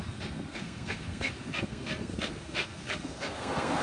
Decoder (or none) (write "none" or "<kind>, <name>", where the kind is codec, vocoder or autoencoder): codec, SNAC